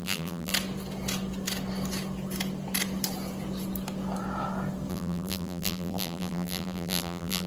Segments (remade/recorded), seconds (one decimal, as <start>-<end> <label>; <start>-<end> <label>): 0.0-0.5 remade; 0.5-4.9 recorded; 4.9-7.5 remade